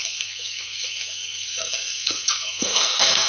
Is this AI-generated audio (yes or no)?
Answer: yes